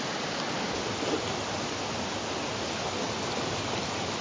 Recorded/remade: recorded